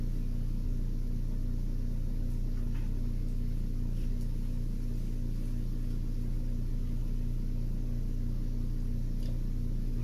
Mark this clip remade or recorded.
recorded